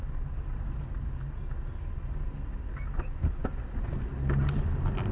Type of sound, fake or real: real